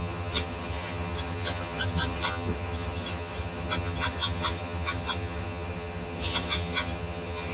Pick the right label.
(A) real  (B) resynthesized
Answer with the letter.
B